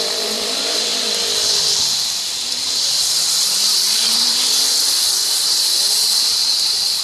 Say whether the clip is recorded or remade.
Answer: remade